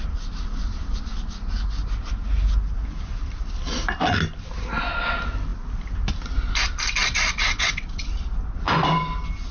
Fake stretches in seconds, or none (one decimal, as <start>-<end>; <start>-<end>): 7.0-8.1